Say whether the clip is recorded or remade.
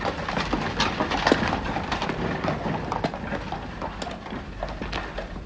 recorded